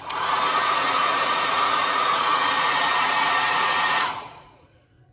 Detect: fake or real fake